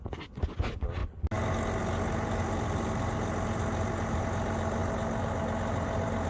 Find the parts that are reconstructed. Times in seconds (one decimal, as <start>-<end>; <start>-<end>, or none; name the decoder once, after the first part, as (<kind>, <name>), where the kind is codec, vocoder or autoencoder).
none